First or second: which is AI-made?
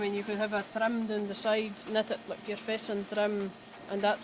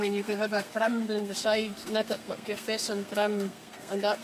second